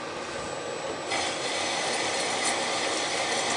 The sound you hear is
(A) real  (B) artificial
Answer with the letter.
A